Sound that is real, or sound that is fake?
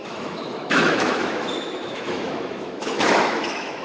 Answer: fake